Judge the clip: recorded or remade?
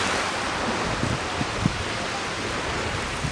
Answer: recorded